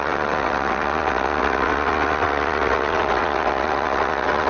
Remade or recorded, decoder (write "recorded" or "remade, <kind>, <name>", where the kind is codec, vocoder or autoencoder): remade, vocoder, WaveNeXt